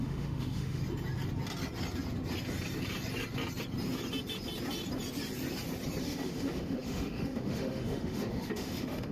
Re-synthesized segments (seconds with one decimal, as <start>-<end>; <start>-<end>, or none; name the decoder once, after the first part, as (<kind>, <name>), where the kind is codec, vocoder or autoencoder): 0.0-0.8 (autoencoder, DAC-VAE); 6.0-9.1